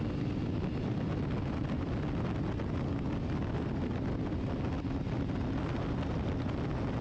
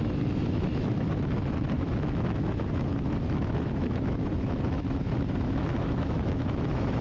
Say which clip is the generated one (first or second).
second